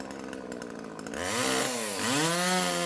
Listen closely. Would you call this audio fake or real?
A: real